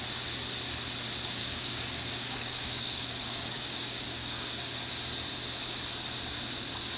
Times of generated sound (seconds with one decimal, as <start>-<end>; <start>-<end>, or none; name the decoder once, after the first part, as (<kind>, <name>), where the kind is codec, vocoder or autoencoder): 1.4-4.6 (codec, DAC)